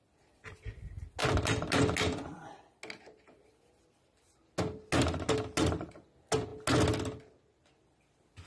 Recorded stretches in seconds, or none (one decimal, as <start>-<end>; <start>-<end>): 0.0-8.5